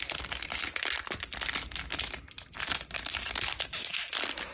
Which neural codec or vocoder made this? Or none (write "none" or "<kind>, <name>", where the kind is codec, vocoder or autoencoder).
none